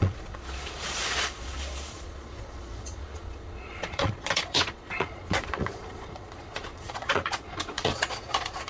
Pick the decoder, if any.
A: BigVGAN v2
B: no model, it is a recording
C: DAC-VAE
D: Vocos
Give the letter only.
D